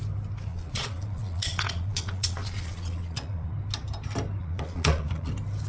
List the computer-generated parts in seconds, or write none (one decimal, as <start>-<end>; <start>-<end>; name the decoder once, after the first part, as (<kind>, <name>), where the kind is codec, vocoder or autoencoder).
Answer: 0.5-3.5 (vocoder, Vocos); 4.4-5.3